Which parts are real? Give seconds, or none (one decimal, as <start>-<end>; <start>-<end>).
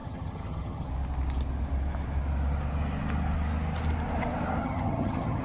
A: 0.9-4.6